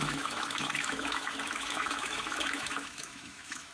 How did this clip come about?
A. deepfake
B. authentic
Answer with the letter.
A